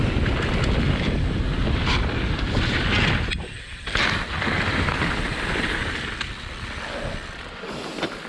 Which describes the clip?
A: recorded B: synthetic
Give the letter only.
A